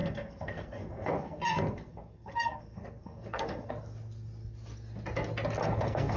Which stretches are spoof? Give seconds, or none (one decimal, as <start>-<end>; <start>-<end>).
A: 0.0-3.7; 5.6-6.2

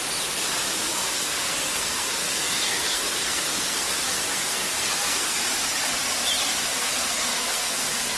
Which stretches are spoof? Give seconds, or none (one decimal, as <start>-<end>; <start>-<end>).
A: 0.9-5.4; 6.7-8.2

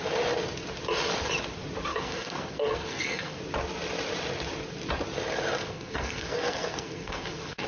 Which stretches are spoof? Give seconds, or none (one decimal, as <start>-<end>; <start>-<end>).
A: 1.9-3.4; 5.6-7.7

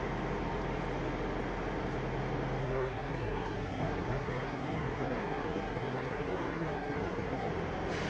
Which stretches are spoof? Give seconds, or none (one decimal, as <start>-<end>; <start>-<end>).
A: 2.6-7.5

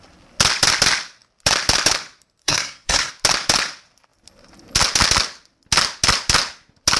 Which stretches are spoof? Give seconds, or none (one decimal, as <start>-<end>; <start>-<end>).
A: 2.4-3.1

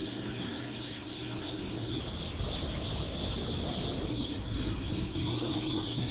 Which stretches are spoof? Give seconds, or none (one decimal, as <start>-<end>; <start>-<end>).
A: 0.0-2.0; 4.1-6.1

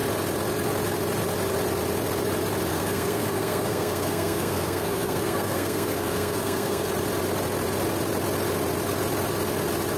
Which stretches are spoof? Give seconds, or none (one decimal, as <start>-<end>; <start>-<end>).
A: 2.7-6.9